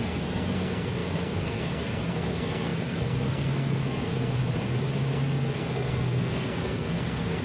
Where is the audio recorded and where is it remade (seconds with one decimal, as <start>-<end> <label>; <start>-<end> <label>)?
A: 0.0-4.4 remade; 4.4-5.1 recorded; 5.1-7.4 remade